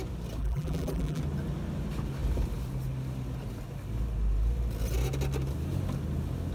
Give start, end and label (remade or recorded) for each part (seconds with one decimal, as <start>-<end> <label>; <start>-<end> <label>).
0.0-0.4 recorded; 0.4-1.2 remade; 1.2-6.5 recorded